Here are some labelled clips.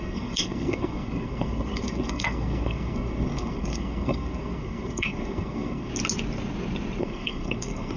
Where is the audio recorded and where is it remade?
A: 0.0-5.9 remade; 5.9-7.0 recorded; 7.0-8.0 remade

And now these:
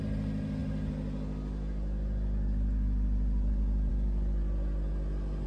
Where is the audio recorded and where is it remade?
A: 0.0-5.5 recorded

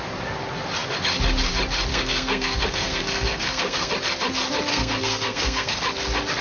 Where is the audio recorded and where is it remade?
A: 0.0-1.9 recorded; 1.9-3.9 remade; 3.9-4.7 recorded; 4.7-5.8 remade; 5.8-6.4 recorded

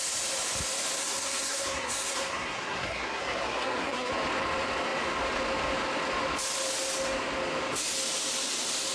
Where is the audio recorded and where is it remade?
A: 0.0-1.0 recorded; 1.0-4.1 remade; 4.1-8.9 recorded